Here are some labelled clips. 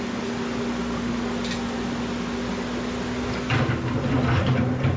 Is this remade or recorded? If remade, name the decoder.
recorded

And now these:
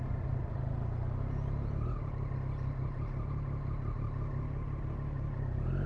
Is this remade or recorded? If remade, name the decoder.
recorded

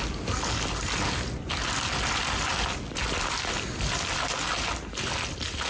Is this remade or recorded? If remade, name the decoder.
recorded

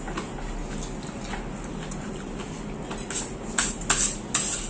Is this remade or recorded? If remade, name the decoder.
recorded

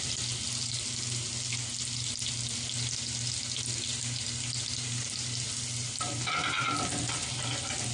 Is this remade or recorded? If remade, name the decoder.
recorded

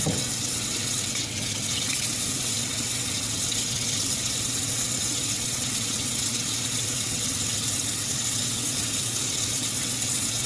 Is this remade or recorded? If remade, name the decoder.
remade, vocoder, WaveNeXt